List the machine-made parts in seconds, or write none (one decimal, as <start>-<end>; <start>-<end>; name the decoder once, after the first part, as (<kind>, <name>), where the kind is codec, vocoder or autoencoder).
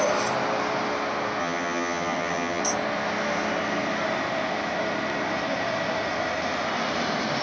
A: 1.4-2.6 (vocoder, HiFi-GAN)